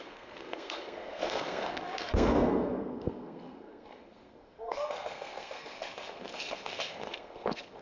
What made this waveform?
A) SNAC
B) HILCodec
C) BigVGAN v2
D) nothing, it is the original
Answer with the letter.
A